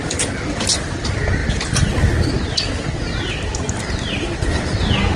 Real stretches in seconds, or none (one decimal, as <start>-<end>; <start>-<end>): 0.0-5.2

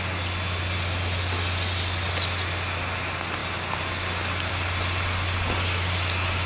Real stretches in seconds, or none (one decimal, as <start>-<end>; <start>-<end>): 0.0-6.5

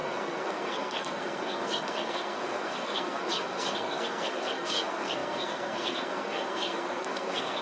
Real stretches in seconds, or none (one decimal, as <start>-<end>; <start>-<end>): none

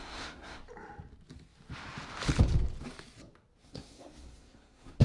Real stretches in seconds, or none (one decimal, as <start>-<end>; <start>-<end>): 0.6-3.6

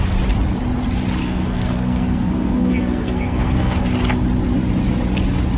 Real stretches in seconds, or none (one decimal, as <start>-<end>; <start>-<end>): 0.0-1.2; 3.8-5.6

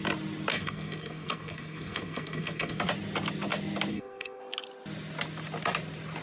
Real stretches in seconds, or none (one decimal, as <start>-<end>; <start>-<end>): 0.0-0.5; 2.8-3.9; 4.4-6.2

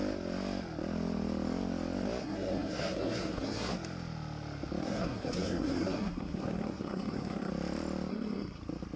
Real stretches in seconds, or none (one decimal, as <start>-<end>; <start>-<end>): 0.0-2.2; 3.7-4.8; 7.5-8.1; 8.6-9.0